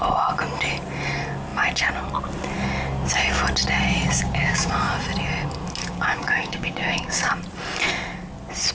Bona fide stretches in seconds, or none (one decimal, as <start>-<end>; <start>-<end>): 0.0-4.1; 4.7-5.8; 7.3-8.7